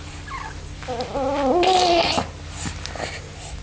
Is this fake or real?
real